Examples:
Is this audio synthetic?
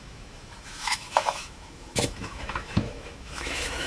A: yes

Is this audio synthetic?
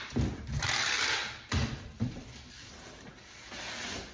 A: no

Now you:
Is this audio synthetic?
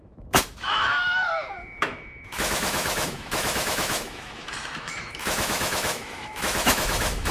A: yes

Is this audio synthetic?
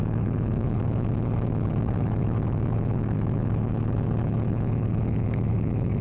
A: yes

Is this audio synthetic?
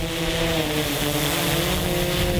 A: no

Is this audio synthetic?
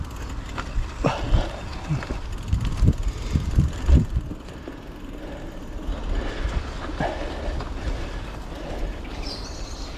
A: no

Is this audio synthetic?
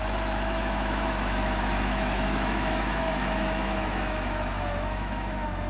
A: yes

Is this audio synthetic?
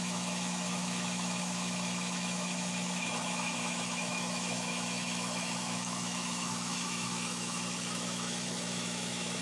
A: yes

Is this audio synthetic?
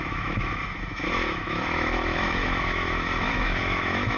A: yes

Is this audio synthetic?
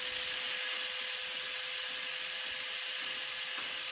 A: no